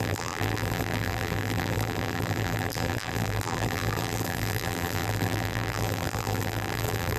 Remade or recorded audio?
remade